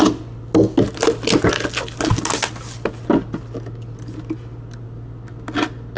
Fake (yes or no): no